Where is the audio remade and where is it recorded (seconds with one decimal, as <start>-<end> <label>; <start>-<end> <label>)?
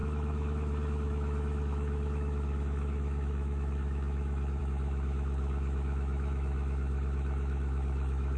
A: 0.0-8.4 remade